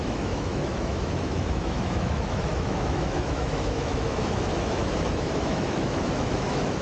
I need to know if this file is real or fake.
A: fake